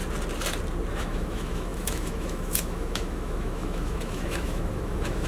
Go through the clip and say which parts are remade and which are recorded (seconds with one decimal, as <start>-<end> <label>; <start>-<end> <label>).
0.0-0.9 recorded; 0.9-5.3 remade